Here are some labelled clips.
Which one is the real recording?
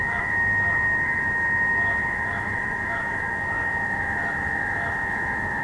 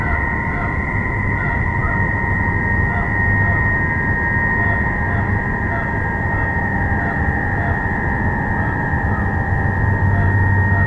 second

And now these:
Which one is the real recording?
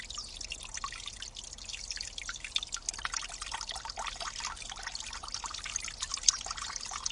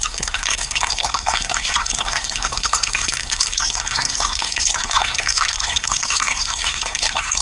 first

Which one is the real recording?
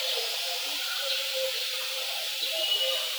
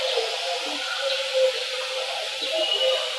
second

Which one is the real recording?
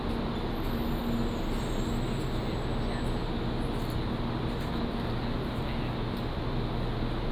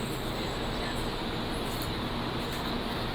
first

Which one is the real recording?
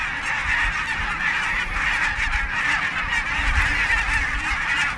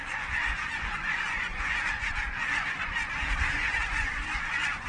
first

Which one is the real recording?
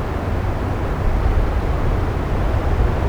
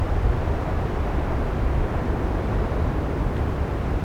first